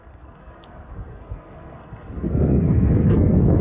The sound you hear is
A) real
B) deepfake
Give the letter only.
B